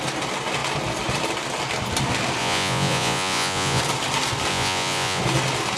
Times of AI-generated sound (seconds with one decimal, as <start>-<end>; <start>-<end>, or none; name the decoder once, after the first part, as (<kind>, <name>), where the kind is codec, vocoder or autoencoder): 2.4-3.8 (vocoder, Vocos); 4.5-5.2